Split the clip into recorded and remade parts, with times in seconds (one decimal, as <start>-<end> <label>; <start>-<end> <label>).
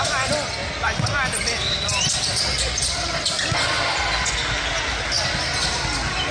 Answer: 0.0-6.3 recorded